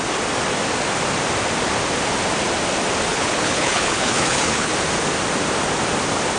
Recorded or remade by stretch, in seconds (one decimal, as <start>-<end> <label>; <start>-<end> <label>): 0.0-3.1 recorded; 3.1-4.7 remade; 4.7-6.4 recorded